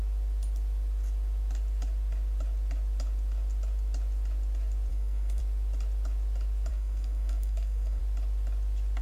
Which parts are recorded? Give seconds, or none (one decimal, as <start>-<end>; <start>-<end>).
0.0-4.9; 5.4-6.7; 8.0-9.0